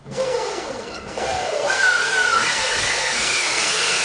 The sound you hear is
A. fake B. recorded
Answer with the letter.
A